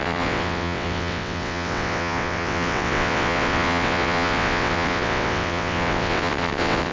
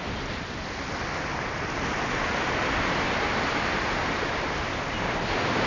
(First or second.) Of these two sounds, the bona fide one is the second